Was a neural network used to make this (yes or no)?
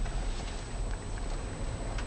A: no